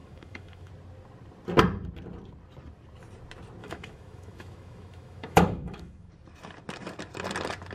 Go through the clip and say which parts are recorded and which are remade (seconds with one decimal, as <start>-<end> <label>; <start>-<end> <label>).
0.0-0.7 remade; 0.7-3.6 recorded; 3.6-6.1 remade; 6.1-7.7 recorded

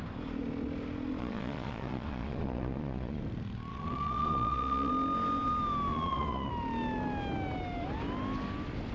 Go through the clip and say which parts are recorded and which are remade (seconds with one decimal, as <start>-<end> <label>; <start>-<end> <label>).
0.0-1.2 recorded; 1.2-3.2 remade; 3.2-3.7 recorded; 3.7-4.9 remade; 4.9-5.9 recorded; 5.9-6.5 remade; 6.5-8.9 recorded

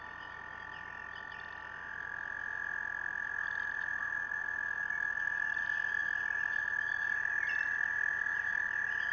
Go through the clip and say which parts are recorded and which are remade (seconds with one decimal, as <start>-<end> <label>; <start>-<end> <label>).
0.0-9.1 recorded

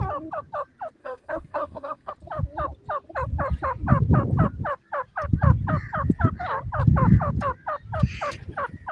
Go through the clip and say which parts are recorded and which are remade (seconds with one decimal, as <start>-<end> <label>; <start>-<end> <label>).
0.0-1.0 recorded; 1.0-2.1 remade; 2.1-8.9 recorded

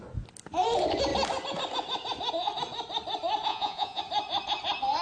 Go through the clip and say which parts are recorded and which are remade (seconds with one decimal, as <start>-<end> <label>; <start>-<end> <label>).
0.0-3.5 recorded; 3.5-4.0 remade; 4.0-5.0 recorded

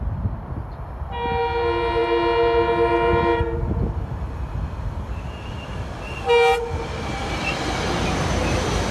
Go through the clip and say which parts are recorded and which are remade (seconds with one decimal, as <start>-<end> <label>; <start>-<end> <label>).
0.0-8.9 recorded

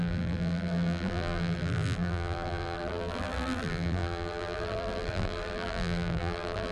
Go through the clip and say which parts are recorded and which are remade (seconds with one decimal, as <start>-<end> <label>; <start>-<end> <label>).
0.0-6.7 remade

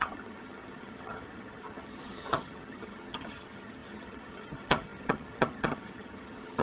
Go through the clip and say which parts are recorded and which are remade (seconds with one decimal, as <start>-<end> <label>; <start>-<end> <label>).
0.0-6.6 remade